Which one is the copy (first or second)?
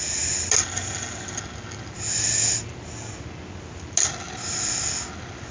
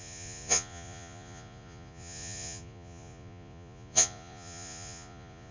second